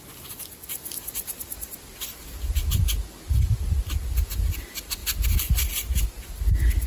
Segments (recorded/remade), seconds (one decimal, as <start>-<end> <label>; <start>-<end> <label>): 0.0-6.9 recorded